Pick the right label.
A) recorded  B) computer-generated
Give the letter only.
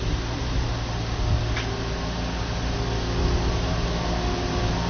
A